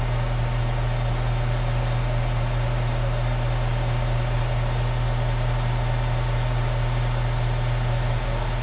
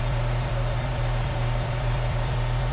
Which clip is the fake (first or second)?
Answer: second